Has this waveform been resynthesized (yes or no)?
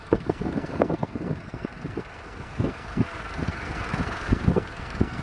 yes